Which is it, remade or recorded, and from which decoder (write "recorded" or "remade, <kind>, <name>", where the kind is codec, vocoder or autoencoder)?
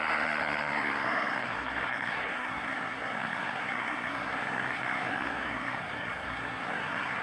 remade, codec, SNAC